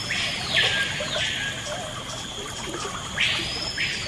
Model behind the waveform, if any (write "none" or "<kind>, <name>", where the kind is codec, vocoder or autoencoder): none